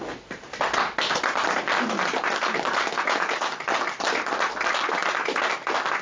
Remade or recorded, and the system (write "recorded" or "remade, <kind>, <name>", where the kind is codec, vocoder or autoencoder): recorded